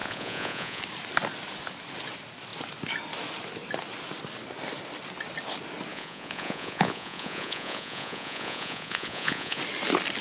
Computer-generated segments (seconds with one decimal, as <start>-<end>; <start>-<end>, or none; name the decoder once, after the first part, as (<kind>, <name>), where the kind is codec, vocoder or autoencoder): 0.0-0.8 (vocoder, Vocos); 5.9-9.6